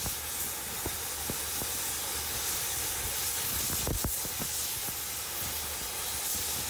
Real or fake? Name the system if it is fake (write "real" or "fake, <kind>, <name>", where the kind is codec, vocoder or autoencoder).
real